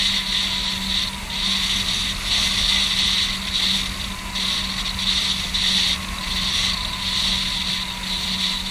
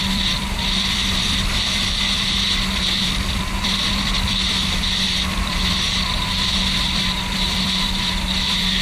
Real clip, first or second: first